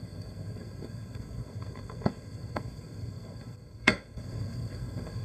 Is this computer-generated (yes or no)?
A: yes